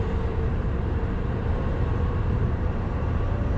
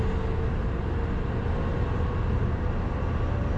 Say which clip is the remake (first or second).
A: first